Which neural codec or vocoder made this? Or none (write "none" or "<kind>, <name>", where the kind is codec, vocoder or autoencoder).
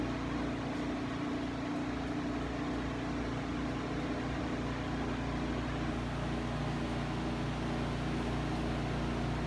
none